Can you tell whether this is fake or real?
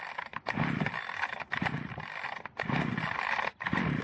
real